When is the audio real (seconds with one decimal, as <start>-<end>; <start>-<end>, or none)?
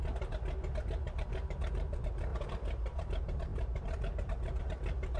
0.0-0.8